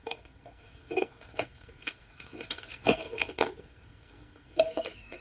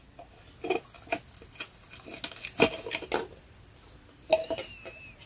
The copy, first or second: first